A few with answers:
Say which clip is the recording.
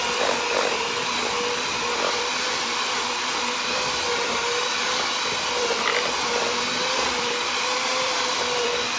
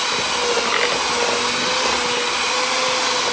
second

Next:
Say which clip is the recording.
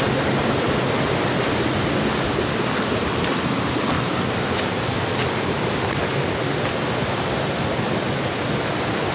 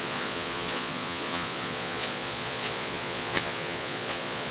first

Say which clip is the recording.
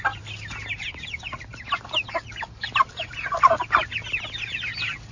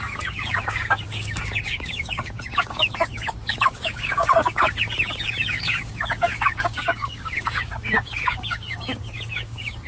first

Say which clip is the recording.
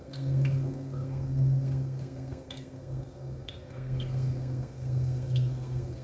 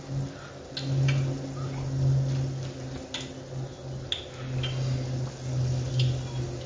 second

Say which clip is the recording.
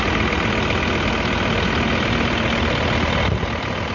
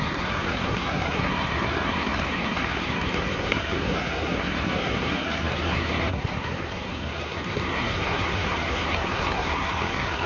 first